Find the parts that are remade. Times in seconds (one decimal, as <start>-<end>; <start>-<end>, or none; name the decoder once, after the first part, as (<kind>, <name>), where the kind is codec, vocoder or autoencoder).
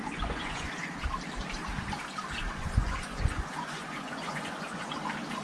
0.0-0.7 (vocoder, Vocos); 2.4-4.9